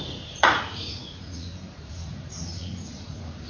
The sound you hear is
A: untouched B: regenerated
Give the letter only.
B